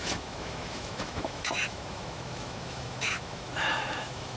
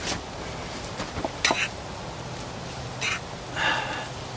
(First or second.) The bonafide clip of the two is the second